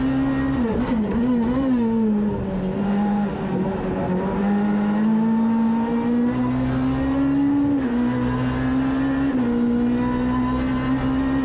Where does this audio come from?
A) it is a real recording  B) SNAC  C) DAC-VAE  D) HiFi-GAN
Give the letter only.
A